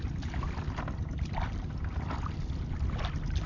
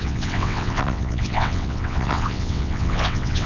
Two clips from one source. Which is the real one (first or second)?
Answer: first